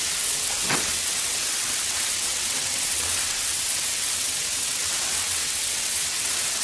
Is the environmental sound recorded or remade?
remade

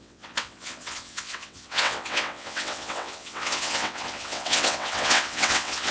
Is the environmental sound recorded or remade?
remade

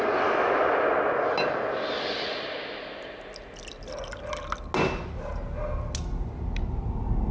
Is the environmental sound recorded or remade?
recorded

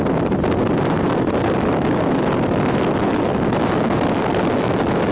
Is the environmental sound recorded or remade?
recorded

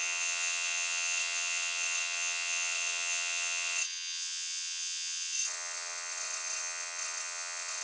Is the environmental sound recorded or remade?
remade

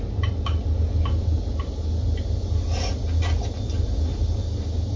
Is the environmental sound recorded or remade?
recorded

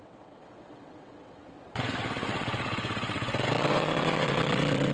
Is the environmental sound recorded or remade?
remade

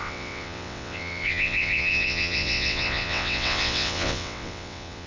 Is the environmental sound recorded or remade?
remade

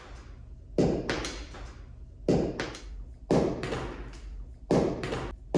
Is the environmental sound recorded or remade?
recorded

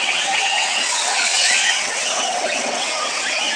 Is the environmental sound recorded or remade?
remade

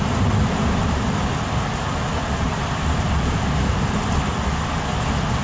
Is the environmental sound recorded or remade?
recorded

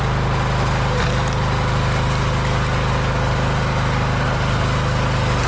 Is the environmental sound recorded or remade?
recorded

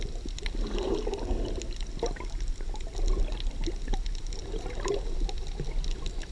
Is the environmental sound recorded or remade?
recorded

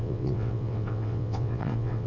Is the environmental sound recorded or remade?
remade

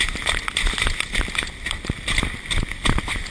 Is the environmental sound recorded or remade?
recorded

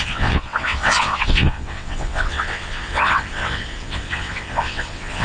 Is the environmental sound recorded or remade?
remade